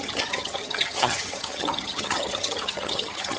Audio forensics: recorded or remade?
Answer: remade